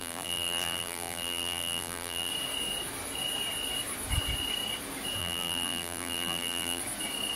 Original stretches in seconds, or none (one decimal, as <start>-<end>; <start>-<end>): 2.3-5.2; 6.8-7.4